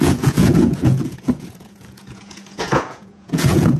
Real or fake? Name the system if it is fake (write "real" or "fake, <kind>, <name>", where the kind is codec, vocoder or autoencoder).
fake, vocoder, Vocos